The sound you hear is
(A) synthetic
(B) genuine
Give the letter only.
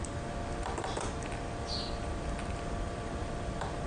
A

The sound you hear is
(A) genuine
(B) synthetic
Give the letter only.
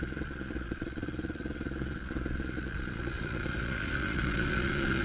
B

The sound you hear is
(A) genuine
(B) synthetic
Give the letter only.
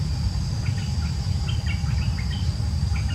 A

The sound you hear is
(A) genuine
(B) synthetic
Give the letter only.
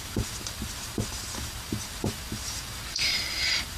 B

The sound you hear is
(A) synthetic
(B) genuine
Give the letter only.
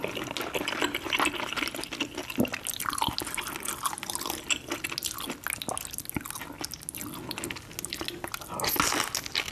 B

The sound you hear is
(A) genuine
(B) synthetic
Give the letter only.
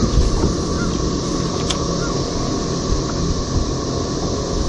A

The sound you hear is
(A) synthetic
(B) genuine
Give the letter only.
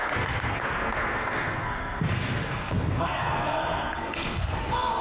A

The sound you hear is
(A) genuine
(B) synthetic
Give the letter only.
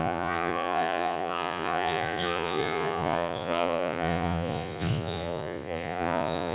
B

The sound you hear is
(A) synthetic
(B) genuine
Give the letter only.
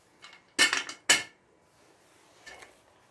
B